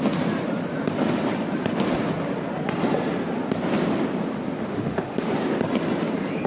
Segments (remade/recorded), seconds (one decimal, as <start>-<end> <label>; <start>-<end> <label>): 0.0-4.7 recorded; 4.7-5.3 remade; 5.3-6.5 recorded